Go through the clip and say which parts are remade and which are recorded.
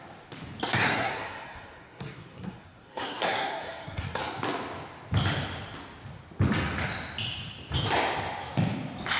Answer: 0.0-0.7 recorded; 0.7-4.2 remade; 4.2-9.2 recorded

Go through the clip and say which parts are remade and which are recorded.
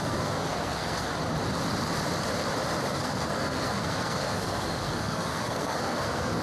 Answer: 0.0-1.1 remade; 1.1-2.9 recorded; 2.9-6.4 remade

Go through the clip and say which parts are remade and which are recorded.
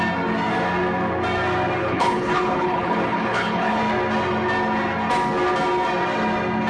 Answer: 0.0-1.8 recorded; 1.8-3.8 remade; 3.8-6.7 recorded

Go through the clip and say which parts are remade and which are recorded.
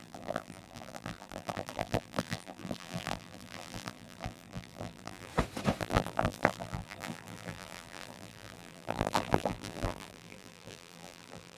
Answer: 0.0-5.3 remade; 5.3-5.8 recorded; 5.8-11.6 remade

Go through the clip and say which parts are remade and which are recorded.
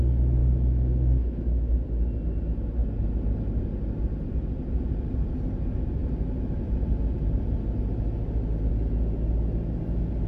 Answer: 0.0-0.4 recorded; 0.4-1.7 remade; 1.7-10.3 recorded